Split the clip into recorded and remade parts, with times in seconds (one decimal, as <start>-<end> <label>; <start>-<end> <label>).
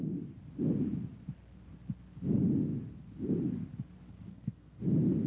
0.0-4.3 recorded; 4.3-4.8 remade; 4.8-5.3 recorded